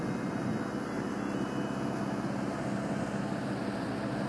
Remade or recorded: recorded